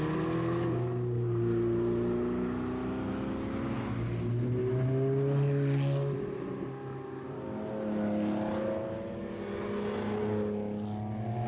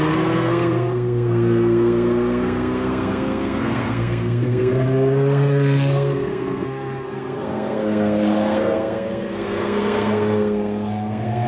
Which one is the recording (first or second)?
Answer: first